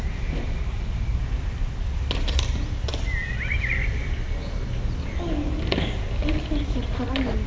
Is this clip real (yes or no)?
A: yes